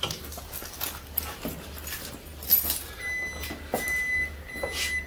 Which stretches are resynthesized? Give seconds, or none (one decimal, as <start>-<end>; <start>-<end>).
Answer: none